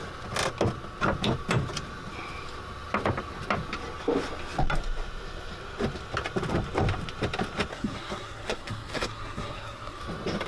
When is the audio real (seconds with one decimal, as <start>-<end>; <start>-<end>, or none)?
0.0-7.7; 10.0-10.5

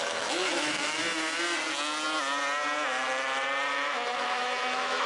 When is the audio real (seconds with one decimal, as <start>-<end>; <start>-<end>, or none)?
1.0-3.7

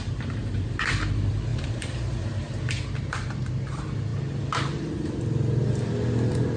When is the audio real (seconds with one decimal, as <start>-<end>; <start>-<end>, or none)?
0.0-1.5; 3.5-6.6

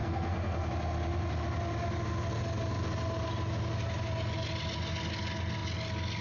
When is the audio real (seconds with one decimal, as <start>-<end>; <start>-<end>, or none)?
0.7-6.2